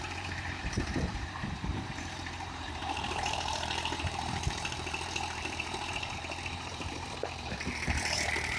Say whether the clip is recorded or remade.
remade